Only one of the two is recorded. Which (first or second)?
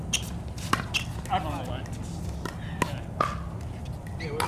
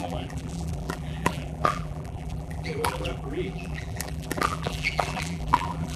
first